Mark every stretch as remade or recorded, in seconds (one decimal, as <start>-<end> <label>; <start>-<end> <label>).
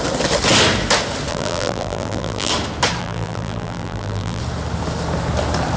0.0-1.3 recorded; 1.3-2.5 remade; 2.5-3.0 recorded; 3.0-4.4 remade; 4.4-5.8 recorded